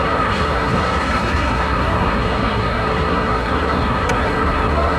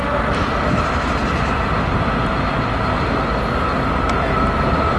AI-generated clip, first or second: first